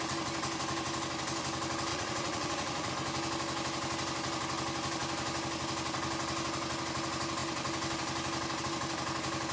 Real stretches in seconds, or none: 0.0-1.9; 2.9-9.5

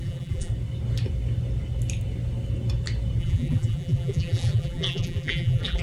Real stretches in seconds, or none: 0.5-3.2

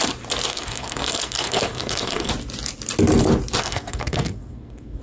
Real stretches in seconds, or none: 0.0-0.5; 2.3-3.6

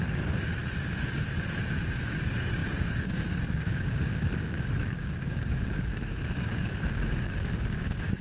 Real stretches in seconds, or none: 0.5-1.9

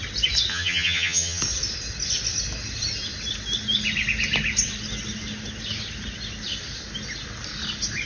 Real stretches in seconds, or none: 0.0-0.5; 1.4-8.1

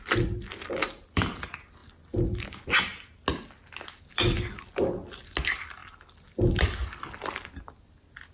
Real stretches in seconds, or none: 0.0-8.3

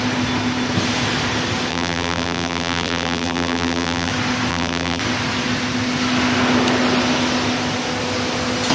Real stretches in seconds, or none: 0.0-1.7; 4.1-4.5; 5.0-8.7

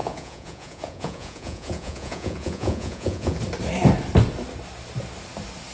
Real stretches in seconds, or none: 3.4-5.7